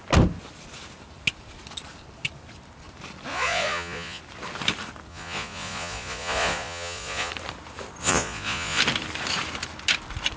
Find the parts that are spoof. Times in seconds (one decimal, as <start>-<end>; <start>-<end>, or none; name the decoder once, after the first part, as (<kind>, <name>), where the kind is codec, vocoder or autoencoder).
3.3-4.2 (vocoder, Vocos); 5.1-7.3; 8.0-8.8